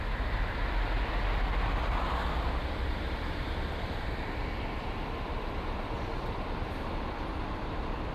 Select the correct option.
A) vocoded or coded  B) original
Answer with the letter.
A